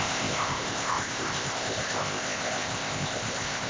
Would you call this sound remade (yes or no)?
yes